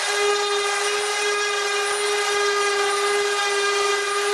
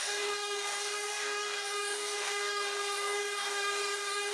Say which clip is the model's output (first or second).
second